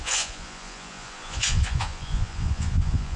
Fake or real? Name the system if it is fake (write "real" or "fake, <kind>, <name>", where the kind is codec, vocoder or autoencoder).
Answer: fake, vocoder, Vocos